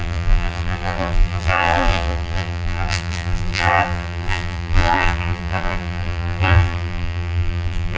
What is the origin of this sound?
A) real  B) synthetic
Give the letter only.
B